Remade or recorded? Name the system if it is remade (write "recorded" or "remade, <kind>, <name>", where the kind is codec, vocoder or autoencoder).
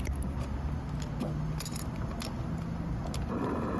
recorded